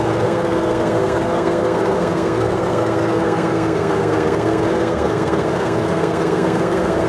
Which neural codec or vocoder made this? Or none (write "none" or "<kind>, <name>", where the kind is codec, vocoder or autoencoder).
codec, SNAC